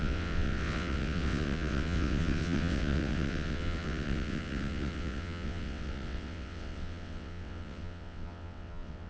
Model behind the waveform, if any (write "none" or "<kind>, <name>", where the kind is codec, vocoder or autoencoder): vocoder, WaveNeXt